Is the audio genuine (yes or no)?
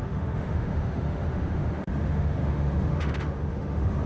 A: no